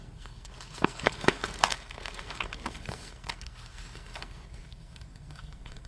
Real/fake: fake